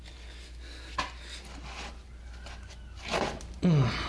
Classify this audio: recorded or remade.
recorded